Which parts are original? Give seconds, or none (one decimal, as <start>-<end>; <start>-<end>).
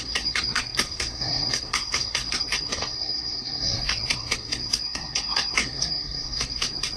none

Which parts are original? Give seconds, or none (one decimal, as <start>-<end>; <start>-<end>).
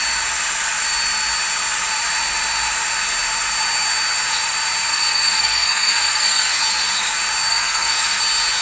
0.0-4.9; 6.6-7.5; 8.2-8.6